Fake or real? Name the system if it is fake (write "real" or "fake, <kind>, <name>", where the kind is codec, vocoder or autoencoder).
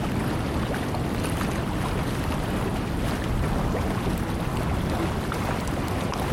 real